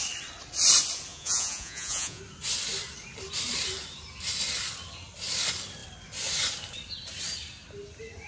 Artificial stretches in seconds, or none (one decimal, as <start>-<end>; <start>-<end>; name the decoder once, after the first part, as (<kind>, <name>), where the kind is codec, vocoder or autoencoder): 1.1-2.2 (vocoder, Vocos)